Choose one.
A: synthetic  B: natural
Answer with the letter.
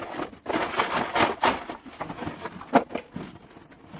B